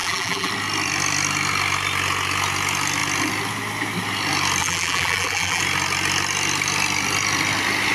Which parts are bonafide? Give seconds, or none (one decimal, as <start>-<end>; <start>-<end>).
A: 0.5-4.6; 5.6-7.9